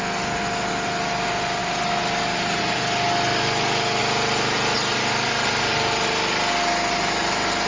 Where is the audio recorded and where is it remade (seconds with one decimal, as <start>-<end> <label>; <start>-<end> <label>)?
0.0-7.7 recorded